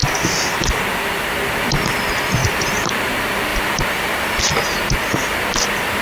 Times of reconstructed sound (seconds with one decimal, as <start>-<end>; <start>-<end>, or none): 2.4-2.9; 3.5-4.4